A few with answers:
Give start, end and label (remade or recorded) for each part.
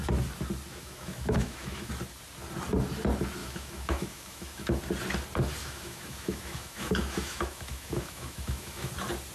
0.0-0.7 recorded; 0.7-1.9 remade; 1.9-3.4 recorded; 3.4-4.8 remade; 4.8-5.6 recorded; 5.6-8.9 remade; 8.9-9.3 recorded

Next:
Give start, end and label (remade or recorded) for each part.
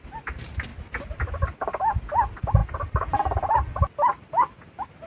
0.0-5.1 recorded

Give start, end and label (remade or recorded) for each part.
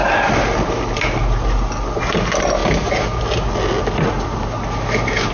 0.0-5.3 recorded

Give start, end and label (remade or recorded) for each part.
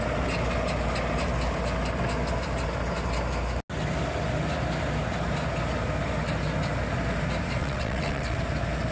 0.0-7.6 recorded; 7.6-8.4 remade; 8.4-8.9 recorded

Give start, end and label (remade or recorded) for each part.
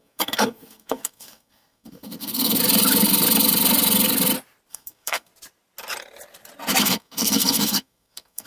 0.0-2.6 remade; 2.6-4.7 recorded; 4.7-5.3 remade; 5.3-6.8 recorded; 6.8-8.5 remade